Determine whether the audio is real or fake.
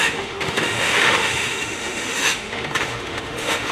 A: fake